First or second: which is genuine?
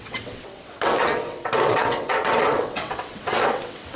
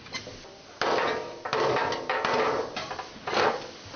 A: second